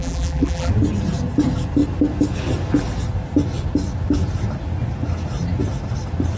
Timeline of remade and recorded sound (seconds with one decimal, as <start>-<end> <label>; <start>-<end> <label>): 0.0-0.7 remade; 0.7-6.4 recorded